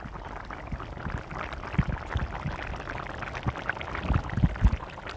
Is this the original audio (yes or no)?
yes